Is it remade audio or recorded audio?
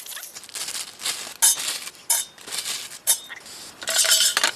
recorded